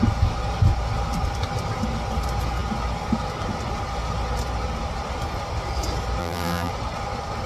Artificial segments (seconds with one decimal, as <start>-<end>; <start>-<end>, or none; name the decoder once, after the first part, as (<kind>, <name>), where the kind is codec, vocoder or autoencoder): 6.2-6.7 (vocoder, BigVGAN v2)